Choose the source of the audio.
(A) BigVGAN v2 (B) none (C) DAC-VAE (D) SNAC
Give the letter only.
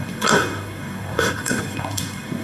D